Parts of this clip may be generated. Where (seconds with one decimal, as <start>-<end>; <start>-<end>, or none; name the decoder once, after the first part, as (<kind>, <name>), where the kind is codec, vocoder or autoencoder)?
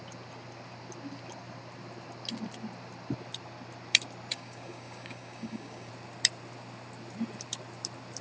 4.3-5.9 (codec, DAC)